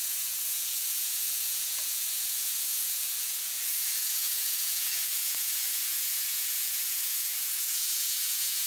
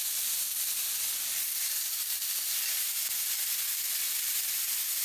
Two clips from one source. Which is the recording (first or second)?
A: second